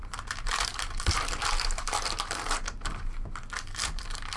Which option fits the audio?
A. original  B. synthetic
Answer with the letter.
B